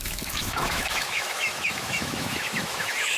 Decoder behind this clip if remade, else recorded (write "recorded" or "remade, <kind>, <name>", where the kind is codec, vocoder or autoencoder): remade, autoencoder, DAC-VAE